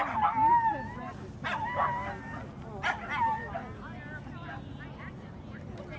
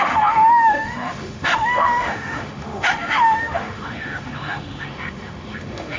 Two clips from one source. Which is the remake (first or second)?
second